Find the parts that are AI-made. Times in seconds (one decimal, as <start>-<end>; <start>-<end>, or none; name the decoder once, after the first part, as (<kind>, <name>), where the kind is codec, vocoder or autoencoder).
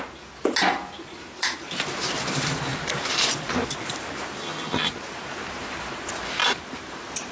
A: 4.4-4.9 (vocoder, HiFi-GAN)